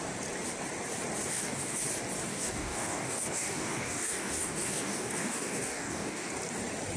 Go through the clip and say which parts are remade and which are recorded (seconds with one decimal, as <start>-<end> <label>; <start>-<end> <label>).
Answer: 0.0-1.3 recorded; 1.3-1.8 remade; 1.8-2.3 recorded; 2.3-6.3 remade; 6.3-7.0 recorded